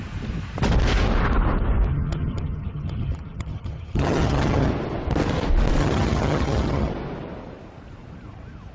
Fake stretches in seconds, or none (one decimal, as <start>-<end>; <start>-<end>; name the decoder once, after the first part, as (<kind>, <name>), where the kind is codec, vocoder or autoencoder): 1.9-4.7 (vocoder, HiFi-GAN); 5.8-6.9